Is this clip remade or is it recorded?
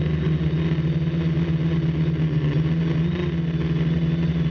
recorded